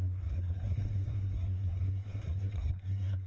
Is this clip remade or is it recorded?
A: remade